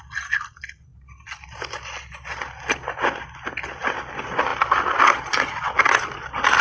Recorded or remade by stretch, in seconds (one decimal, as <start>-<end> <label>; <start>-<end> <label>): 0.0-6.6 recorded